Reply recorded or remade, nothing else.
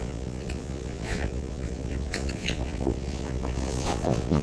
remade